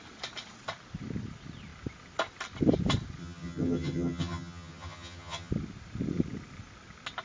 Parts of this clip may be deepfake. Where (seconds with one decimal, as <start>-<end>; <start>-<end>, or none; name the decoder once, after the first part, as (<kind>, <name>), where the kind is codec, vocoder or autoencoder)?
3.2-5.5 (vocoder, HiFi-GAN)